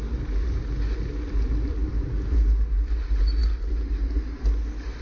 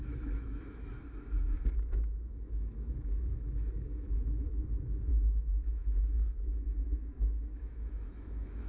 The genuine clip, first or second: first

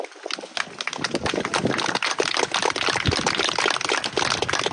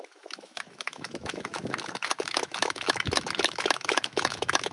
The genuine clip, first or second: first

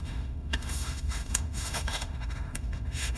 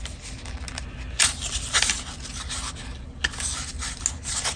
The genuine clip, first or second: second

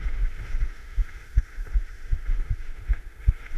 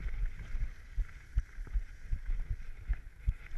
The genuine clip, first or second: second